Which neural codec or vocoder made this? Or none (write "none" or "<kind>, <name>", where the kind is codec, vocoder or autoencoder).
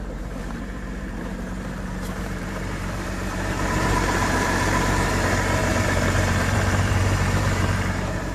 vocoder, BigVGAN v2